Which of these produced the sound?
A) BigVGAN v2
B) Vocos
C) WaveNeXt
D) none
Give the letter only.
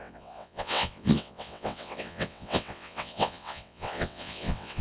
C